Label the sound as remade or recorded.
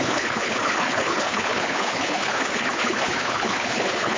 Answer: remade